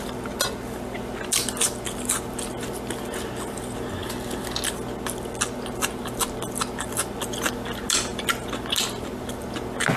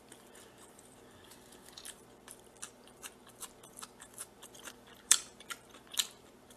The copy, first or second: second